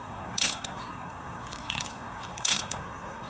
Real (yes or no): no